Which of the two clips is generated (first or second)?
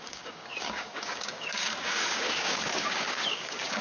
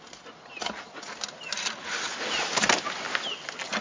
first